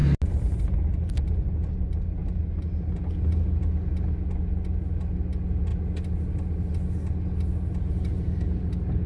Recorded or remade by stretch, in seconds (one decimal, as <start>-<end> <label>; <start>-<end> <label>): 0.0-9.1 recorded